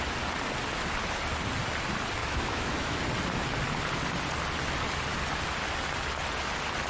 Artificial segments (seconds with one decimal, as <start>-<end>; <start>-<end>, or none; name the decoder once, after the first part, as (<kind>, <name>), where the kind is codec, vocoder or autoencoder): 2.2-3.0 (autoencoder, DAC-VAE)